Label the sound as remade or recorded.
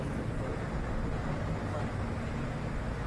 recorded